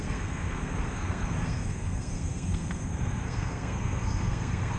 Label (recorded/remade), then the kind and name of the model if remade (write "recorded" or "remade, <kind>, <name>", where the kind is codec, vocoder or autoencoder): remade, codec, SNAC